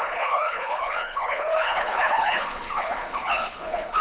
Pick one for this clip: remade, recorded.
remade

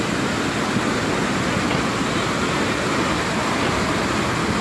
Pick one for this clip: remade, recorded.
recorded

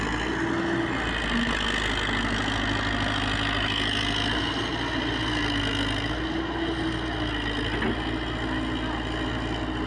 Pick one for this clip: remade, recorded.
recorded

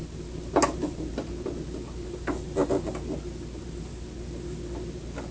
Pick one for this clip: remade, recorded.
recorded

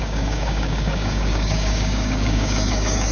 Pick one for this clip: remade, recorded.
remade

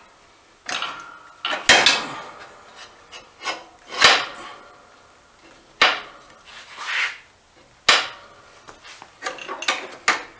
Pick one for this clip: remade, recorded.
recorded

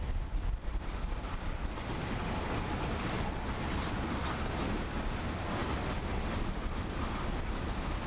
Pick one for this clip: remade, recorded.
recorded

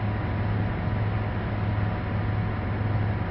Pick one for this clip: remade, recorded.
recorded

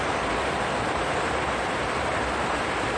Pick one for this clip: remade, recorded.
recorded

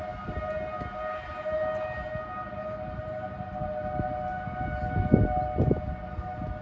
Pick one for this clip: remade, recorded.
recorded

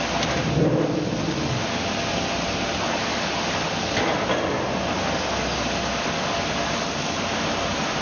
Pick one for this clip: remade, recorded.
recorded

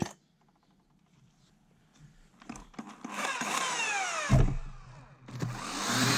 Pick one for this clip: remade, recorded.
recorded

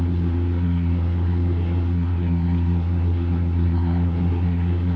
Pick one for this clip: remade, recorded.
remade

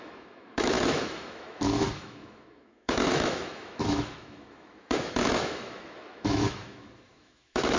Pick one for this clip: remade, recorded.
remade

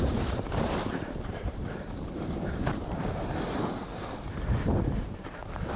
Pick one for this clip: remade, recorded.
remade